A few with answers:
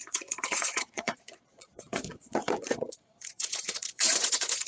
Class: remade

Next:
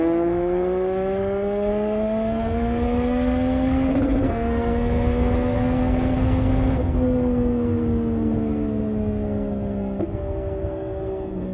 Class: remade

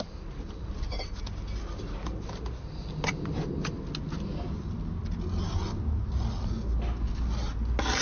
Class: recorded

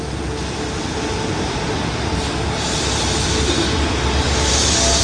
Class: recorded